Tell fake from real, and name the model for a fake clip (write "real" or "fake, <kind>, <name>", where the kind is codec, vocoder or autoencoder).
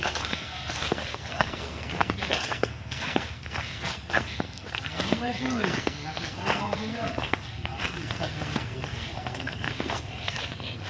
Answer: fake, codec, SNAC